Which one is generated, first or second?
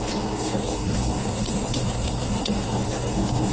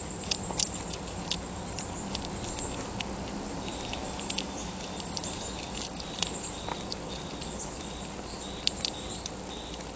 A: first